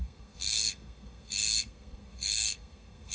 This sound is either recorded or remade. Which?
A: remade